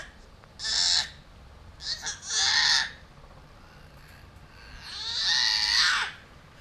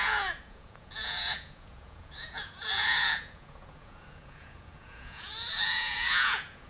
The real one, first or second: first